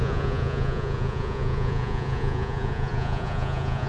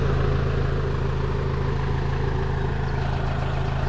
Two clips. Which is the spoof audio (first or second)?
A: first